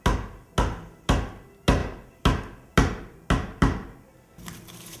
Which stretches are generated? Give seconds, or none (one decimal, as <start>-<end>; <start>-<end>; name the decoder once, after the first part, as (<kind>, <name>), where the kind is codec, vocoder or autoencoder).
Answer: none